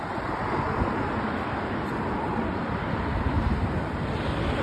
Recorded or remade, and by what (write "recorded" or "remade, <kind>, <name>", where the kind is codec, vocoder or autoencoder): recorded